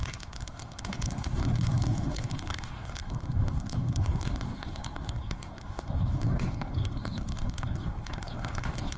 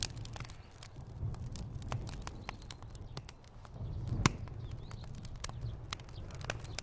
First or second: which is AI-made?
first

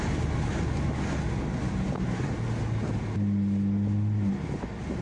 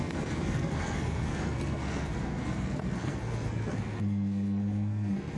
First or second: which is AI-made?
second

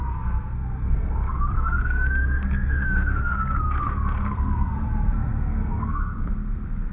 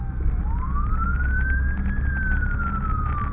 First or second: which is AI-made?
first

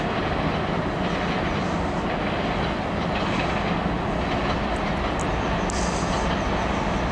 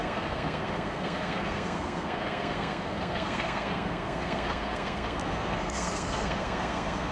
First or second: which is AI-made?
second